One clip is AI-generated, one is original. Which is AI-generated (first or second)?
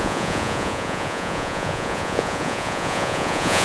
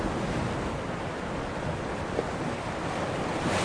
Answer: first